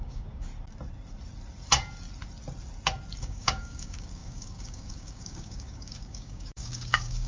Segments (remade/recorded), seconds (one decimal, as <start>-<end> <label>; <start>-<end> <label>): 0.0-0.5 remade; 0.5-3.2 recorded; 3.2-7.3 remade